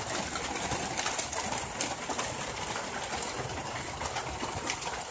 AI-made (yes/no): no